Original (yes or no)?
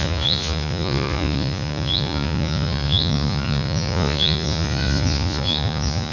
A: no